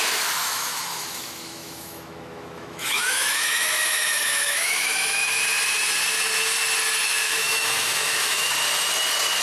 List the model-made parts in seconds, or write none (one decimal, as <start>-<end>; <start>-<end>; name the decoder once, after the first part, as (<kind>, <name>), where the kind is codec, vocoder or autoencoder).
0.4-5.4 (autoencoder, DAC-VAE); 7.0-8.5